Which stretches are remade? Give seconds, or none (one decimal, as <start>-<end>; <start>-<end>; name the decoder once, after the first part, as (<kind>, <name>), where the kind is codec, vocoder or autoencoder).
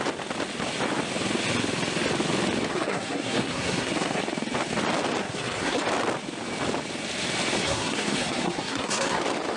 2.7-4.2 (codec, SNAC); 5.2-5.8; 7.6-9.2